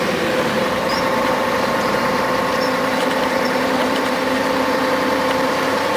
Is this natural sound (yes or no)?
no